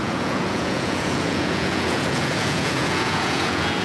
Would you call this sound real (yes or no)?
no